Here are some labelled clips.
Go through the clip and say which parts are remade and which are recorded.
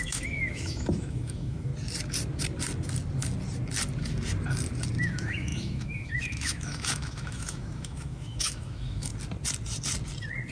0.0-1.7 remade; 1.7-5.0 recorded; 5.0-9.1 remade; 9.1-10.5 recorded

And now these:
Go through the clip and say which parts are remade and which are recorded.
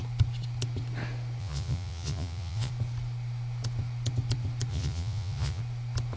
0.0-1.4 recorded; 1.4-2.7 remade; 2.7-4.7 recorded; 4.7-5.6 remade; 5.6-6.2 recorded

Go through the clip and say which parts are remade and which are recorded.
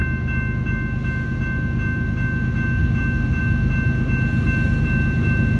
0.0-5.6 recorded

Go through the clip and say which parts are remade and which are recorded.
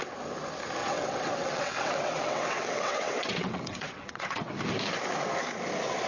0.0-0.8 recorded; 0.8-4.5 remade; 4.5-6.1 recorded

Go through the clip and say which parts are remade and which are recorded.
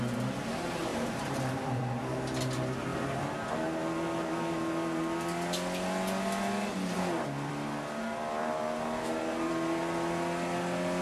0.0-0.9 recorded; 0.9-1.8 remade; 1.8-8.4 recorded; 8.4-9.5 remade; 9.5-11.0 recorded